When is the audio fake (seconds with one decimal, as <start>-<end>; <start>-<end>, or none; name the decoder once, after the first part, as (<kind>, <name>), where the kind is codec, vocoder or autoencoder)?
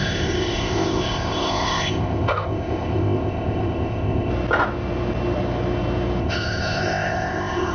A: 0.0-4.3 (codec, ZipCodec); 6.2-7.7